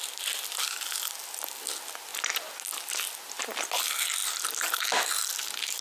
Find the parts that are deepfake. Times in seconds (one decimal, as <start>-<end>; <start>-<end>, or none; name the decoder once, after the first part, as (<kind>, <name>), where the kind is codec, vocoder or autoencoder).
none

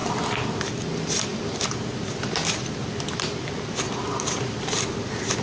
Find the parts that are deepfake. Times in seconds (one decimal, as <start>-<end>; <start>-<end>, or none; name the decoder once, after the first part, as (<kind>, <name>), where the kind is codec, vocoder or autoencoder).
none

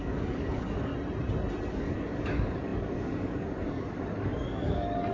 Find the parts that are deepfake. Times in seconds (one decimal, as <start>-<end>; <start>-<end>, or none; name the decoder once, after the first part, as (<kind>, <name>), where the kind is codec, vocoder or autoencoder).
0.0-0.9 (codec, DAC); 1.7-5.1

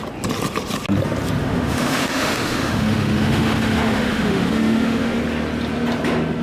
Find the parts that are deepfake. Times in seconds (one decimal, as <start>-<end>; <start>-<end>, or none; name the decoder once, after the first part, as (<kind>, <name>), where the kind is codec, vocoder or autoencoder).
1.4-5.2 (autoencoder, DAC-VAE)

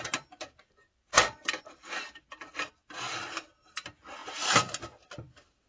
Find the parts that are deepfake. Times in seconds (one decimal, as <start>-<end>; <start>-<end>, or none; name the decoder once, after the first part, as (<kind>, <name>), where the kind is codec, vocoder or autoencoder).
none